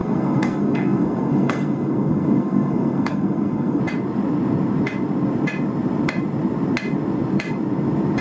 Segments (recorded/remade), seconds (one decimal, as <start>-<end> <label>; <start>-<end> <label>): 0.0-3.8 remade; 3.8-8.2 recorded